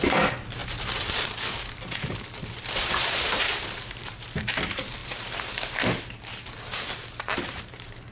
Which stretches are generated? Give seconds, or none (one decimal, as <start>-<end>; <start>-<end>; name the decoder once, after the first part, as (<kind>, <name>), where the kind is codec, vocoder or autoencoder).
0.0-8.1 (vocoder, BigVGAN v2)